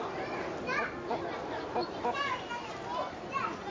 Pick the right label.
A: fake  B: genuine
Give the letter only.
B